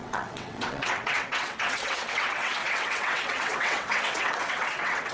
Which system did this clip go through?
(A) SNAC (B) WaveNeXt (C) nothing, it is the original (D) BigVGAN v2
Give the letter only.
B